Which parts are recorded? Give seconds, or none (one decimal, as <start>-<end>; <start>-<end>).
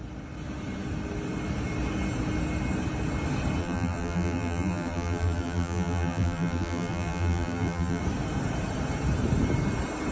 0.0-3.6; 8.0-10.1